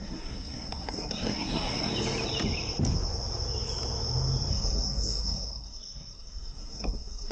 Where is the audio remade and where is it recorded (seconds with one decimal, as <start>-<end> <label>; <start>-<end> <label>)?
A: 0.0-1.9 remade; 1.9-4.5 recorded; 4.5-7.3 remade